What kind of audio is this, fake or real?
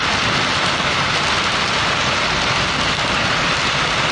real